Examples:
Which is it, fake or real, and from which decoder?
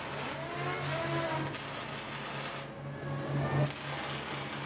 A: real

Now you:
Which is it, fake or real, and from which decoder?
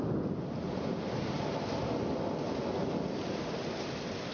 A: real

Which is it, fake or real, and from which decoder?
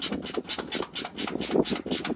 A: real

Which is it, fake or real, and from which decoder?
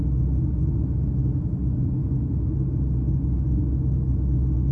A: real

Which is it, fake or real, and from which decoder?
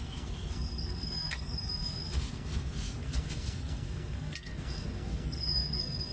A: fake, codec, SNAC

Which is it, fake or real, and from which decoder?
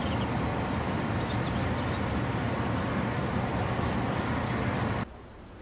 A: real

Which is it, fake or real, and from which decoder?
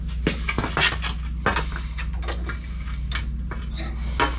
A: real